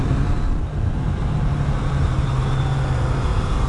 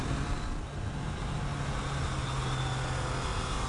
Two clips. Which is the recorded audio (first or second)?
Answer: second